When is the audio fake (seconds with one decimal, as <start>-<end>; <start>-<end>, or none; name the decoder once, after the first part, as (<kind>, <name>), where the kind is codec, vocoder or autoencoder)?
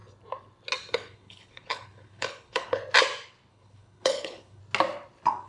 0.9-2.8 (codec, HILCodec); 3.5-4.6